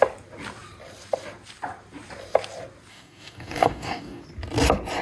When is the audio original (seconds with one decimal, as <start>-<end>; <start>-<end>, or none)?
0.0-2.9; 4.2-5.0